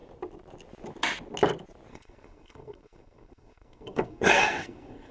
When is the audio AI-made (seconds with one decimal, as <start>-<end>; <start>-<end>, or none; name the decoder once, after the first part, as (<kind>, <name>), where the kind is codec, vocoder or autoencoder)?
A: 1.9-5.1 (codec, SNAC)